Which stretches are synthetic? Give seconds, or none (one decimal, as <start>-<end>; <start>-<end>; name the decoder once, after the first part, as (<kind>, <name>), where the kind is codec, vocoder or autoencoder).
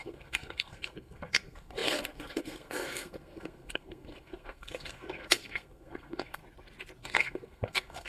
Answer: 0.0-6.4 (codec, SNAC); 7.0-8.1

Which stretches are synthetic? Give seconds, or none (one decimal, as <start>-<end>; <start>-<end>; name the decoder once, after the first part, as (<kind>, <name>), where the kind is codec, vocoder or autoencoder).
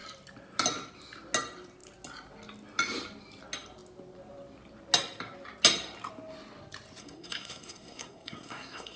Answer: 7.0-9.0 (codec, SNAC)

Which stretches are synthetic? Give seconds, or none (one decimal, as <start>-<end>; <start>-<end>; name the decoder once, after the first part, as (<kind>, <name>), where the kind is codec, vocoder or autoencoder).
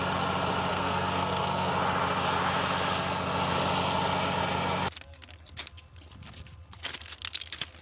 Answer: 0.7-1.7 (codec, SNAC)